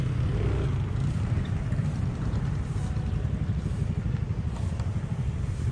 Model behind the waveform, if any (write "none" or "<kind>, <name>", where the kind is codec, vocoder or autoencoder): none